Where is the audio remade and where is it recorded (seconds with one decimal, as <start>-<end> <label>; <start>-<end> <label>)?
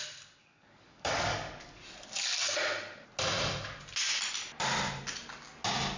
0.0-0.4 recorded; 0.4-1.8 remade; 1.8-6.0 recorded